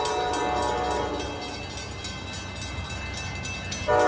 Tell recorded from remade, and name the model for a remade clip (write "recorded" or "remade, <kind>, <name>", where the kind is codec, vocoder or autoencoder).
recorded